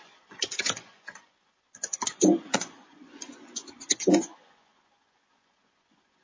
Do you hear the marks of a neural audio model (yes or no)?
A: yes